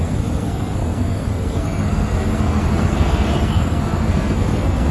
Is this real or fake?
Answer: fake